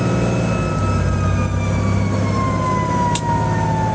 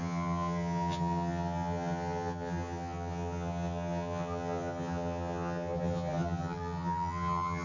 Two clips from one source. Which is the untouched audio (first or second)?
first